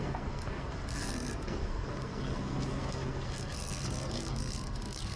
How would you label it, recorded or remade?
remade